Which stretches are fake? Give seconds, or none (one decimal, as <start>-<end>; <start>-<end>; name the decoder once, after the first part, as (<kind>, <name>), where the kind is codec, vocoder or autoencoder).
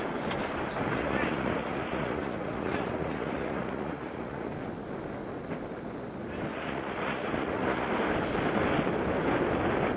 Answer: 0.9-4.5 (vocoder, Vocos); 6.5-7.9